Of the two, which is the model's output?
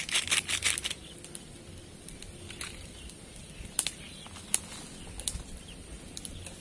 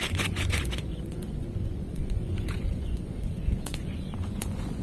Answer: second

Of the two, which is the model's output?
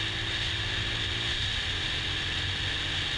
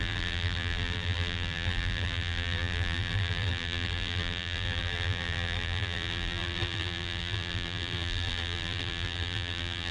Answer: second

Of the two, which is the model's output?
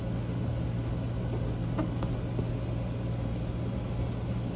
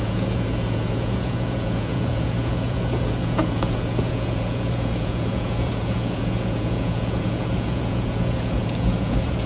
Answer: second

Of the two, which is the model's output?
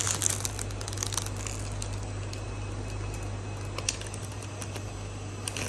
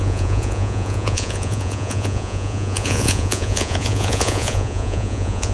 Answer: second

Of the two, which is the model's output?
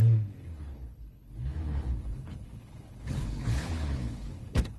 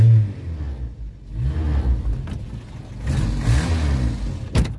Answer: first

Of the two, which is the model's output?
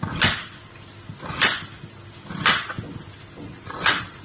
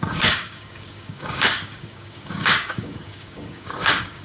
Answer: second